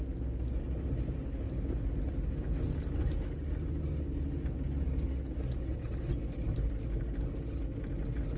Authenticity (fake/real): real